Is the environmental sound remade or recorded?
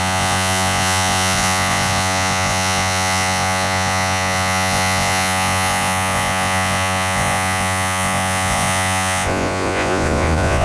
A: remade